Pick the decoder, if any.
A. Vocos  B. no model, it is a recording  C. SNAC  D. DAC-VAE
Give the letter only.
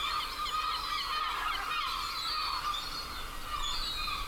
B